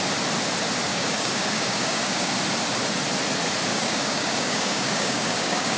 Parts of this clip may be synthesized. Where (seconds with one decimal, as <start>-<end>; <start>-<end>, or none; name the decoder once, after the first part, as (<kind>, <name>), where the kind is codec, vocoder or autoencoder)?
0.9-2.3 (codec, DAC); 3.7-5.8